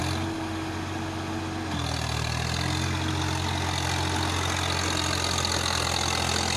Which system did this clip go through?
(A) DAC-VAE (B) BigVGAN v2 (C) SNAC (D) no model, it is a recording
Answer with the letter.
D